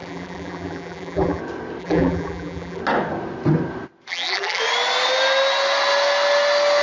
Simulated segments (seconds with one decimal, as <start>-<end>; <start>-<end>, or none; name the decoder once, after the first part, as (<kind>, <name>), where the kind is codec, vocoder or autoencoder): 0.0-1.4 (vocoder, BigVGAN v2); 1.8-2.8; 4.1-4.6